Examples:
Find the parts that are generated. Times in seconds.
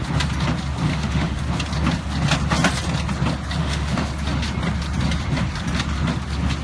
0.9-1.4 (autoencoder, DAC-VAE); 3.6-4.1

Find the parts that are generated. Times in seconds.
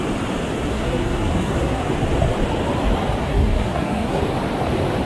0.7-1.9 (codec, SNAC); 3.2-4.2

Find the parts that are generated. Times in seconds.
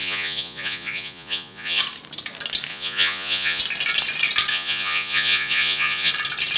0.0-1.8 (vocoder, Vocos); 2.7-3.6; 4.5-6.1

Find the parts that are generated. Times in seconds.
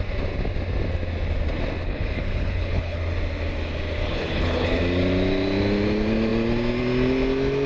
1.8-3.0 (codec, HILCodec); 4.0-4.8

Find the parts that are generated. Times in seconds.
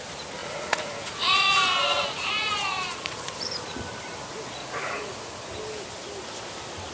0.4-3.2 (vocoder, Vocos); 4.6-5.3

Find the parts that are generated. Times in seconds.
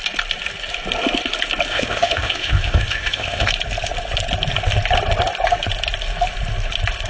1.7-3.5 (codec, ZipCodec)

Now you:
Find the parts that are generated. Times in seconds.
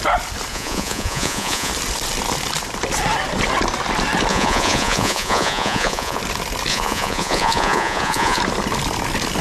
0.5-1.7 (vocoder, Vocos); 4.3-6.2; 6.7-8.4